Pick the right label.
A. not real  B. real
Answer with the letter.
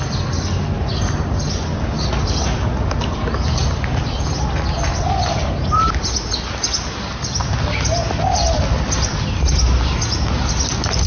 B